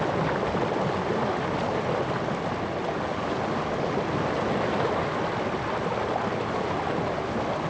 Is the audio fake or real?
real